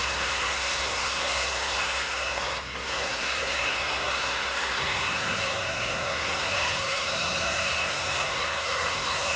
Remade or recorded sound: remade